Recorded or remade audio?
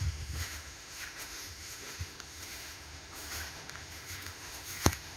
remade